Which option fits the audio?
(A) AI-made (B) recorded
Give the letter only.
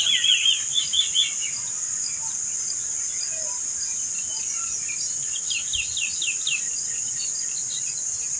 B